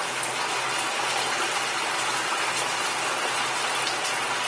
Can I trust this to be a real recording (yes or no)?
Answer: yes